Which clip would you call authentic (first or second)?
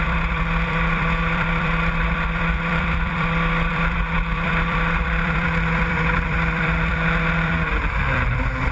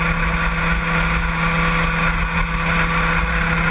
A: second